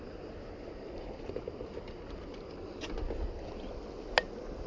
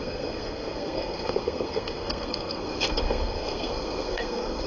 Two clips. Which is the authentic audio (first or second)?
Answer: first